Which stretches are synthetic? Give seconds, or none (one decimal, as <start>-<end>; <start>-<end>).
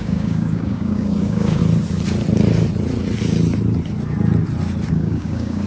0.0-1.6; 4.9-5.7